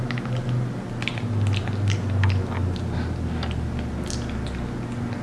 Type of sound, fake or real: real